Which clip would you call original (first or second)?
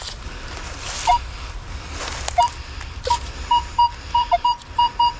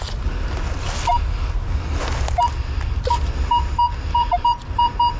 second